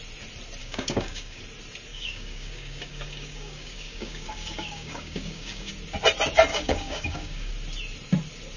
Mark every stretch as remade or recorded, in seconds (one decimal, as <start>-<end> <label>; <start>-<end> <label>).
0.0-0.6 recorded; 0.6-1.4 remade; 1.4-1.9 recorded; 1.9-5.7 remade; 5.7-6.5 recorded; 6.5-7.5 remade; 7.5-8.6 recorded